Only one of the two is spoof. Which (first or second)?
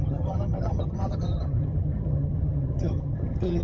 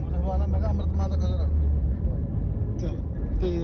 first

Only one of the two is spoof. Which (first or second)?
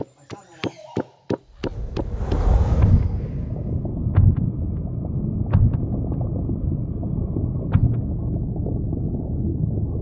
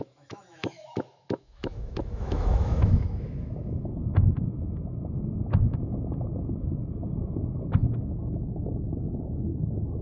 second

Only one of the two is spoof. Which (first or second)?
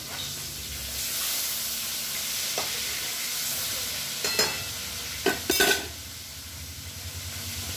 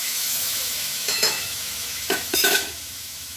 second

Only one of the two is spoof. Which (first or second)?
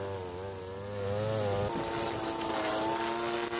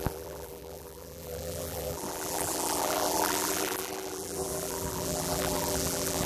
second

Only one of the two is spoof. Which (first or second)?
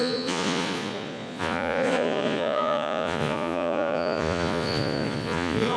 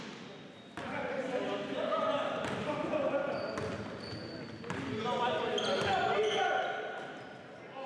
first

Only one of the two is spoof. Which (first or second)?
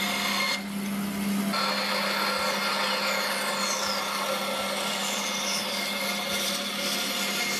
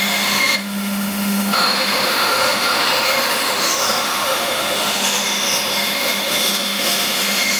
second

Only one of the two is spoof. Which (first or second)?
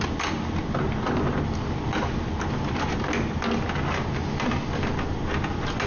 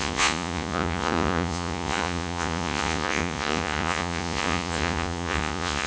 second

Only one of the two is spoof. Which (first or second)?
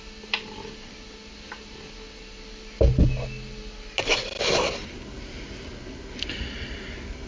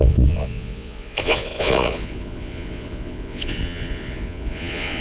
second